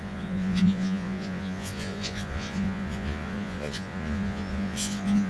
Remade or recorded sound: remade